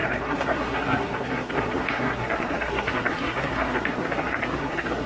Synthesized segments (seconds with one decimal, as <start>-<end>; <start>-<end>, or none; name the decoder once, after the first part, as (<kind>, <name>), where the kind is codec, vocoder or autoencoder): 0.0-5.1 (codec, SNAC)